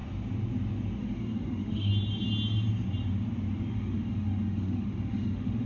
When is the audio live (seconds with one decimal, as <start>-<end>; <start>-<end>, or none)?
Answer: 0.0-1.0; 1.9-3.7